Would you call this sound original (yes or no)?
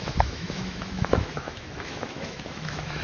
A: no